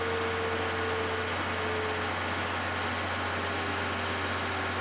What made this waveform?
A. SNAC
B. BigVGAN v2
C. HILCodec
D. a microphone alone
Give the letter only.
D